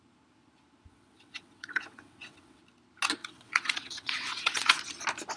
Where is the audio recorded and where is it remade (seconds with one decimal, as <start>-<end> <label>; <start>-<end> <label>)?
0.0-0.9 recorded; 0.9-2.6 remade; 2.6-3.2 recorded; 3.2-4.8 remade; 4.8-5.4 recorded